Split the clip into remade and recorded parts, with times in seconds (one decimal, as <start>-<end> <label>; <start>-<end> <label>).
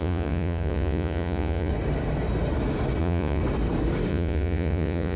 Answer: 0.0-1.7 remade; 1.7-3.0 recorded; 3.0-3.4 remade; 3.4-4.1 recorded; 4.1-5.2 remade